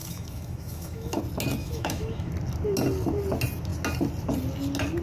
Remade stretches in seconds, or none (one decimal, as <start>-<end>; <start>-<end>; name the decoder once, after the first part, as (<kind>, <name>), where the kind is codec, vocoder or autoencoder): 0.0-1.2 (autoencoder, DAC-VAE); 1.6-2.3